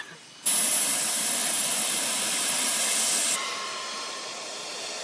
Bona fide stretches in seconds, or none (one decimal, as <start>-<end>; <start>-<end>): 0.0-1.4; 2.8-5.0